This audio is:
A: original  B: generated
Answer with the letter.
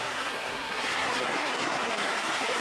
B